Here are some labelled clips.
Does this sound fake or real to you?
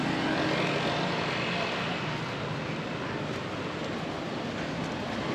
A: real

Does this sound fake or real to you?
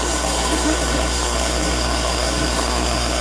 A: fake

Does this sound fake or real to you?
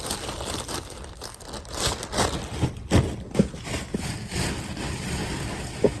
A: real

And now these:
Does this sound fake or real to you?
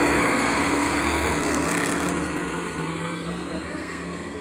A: fake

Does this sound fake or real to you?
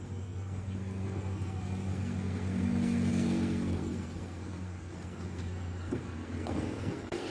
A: fake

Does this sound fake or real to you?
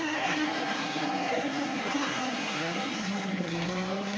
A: fake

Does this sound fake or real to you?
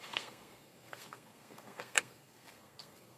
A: fake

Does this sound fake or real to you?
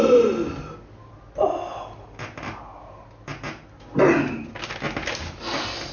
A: real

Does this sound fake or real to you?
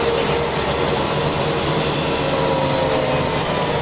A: real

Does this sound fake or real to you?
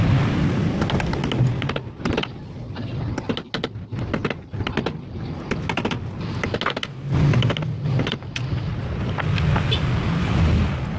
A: real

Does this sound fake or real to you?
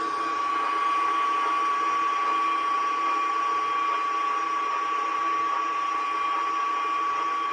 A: real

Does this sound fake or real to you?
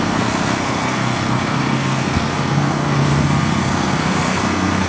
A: fake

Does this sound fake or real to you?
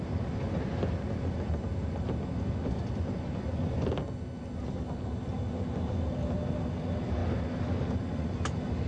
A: real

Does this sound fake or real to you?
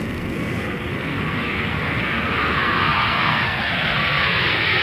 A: fake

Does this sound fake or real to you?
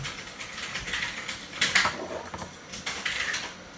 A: real